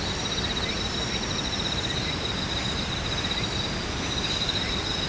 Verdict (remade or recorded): recorded